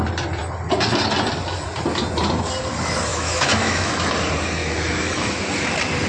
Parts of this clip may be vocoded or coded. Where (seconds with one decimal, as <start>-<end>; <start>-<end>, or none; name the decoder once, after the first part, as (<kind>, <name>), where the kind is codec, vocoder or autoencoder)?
3.1-4.1 (autoencoder, DAC-VAE); 4.6-5.4